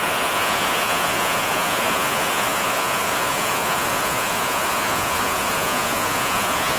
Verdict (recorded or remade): remade